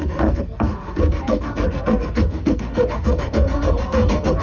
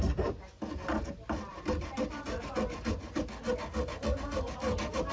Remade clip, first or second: first